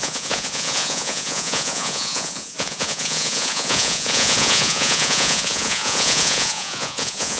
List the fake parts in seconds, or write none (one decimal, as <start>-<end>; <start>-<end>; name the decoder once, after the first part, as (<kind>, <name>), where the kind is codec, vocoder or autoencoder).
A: 0.0-7.4 (vocoder, Vocos)